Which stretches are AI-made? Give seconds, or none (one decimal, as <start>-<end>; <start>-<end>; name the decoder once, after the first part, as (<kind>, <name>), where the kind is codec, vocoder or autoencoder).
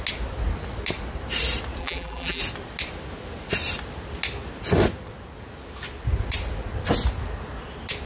1.8-2.4 (vocoder, BigVGAN v2)